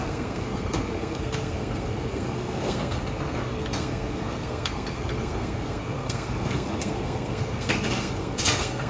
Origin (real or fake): fake